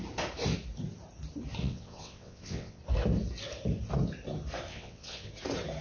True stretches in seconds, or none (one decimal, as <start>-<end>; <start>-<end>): 0.0-1.6; 2.8-4.7; 5.3-5.8